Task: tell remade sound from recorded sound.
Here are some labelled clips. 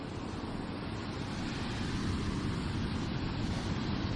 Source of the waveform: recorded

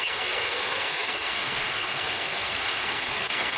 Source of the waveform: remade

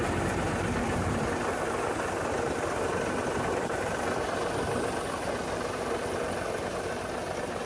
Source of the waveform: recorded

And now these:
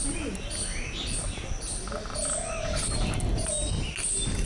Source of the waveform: recorded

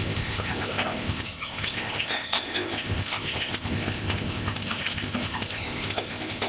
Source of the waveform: remade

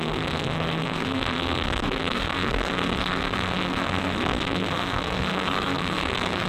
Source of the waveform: remade